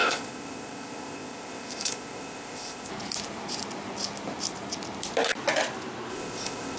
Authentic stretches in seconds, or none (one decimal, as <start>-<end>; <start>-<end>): 2.9-6.1